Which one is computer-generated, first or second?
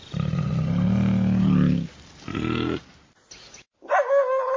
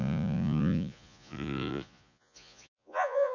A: second